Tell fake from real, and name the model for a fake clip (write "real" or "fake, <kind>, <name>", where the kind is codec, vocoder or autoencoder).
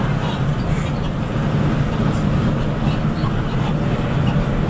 real